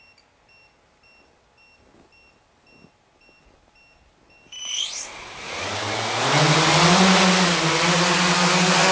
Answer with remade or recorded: recorded